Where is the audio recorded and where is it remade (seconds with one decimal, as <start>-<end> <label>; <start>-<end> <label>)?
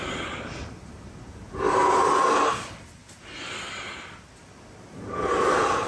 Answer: 0.0-5.9 recorded